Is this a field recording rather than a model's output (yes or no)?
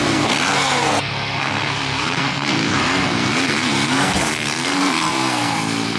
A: no